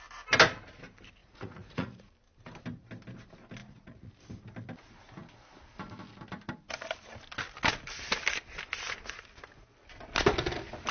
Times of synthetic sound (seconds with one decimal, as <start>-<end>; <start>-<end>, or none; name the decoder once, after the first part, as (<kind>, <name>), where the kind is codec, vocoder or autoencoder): 1.2-2.1 (vocoder, Vocos); 3.6-4.1